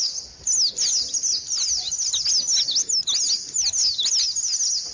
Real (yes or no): yes